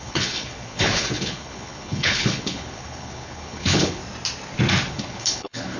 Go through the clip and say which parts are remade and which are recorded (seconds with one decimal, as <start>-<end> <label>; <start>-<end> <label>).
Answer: 0.0-4.0 remade; 4.0-4.9 recorded; 4.9-5.8 remade